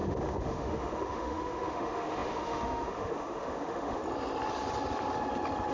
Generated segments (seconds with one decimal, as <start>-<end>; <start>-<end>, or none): 0.0-4.0